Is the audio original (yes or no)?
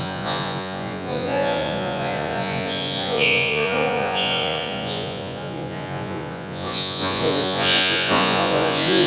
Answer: no